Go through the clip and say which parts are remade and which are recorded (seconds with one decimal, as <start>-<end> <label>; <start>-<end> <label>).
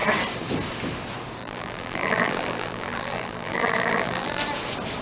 0.0-1.4 recorded; 1.4-4.4 remade; 4.4-5.0 recorded